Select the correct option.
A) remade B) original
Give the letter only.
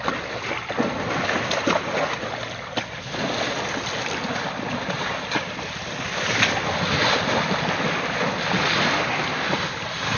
B